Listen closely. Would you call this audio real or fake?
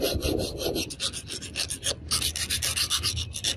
real